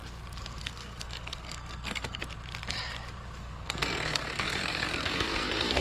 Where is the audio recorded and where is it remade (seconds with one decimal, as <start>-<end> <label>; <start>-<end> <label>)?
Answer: 0.0-0.6 recorded; 0.6-2.2 remade; 2.2-3.4 recorded; 3.4-5.8 remade